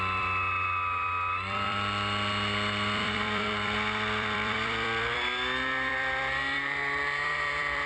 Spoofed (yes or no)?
yes